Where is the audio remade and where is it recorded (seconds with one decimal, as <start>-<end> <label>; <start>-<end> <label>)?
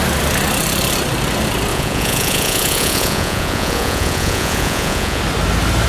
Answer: 0.0-1.7 recorded; 1.7-5.2 remade; 5.2-5.9 recorded